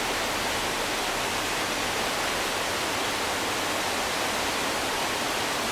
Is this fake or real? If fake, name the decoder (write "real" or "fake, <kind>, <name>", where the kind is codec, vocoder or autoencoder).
real